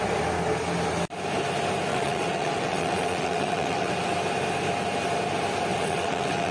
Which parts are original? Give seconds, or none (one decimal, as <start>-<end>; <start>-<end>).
0.0-1.9; 3.9-5.7